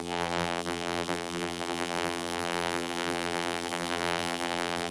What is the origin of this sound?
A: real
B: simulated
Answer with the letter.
B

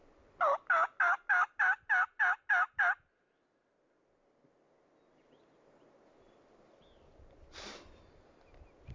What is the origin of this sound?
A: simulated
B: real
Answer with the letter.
B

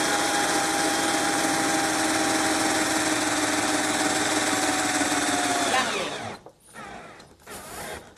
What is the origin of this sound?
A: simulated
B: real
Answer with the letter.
B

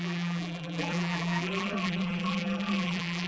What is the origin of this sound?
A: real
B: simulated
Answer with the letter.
B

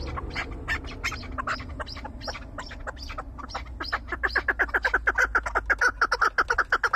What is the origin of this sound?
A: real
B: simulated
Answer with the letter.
A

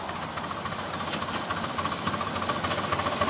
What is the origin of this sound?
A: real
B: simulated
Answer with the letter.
A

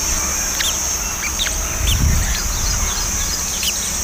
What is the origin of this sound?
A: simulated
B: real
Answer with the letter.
B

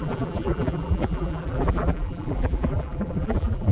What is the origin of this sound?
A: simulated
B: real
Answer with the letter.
A